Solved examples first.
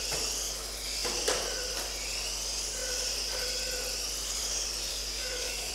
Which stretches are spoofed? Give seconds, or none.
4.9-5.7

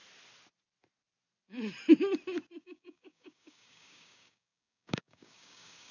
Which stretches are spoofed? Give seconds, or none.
2.6-5.9

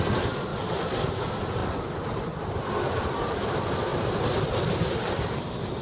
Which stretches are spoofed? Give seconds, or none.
none

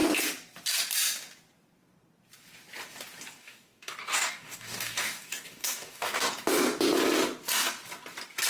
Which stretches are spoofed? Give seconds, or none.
3.4-6.3

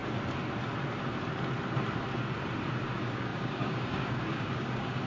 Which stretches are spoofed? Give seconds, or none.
2.8-5.1

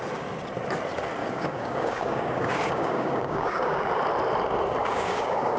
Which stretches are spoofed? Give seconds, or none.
1.2-3.9; 4.8-5.6

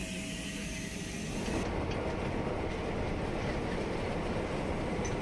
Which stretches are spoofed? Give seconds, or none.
none